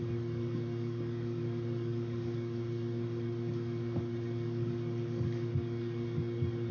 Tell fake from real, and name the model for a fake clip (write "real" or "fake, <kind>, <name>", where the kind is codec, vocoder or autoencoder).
fake, codec, DAC